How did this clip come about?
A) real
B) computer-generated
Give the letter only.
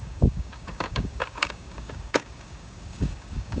B